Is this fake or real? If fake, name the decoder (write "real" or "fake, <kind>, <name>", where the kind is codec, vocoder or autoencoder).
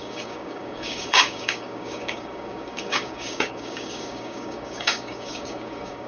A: fake, codec, DAC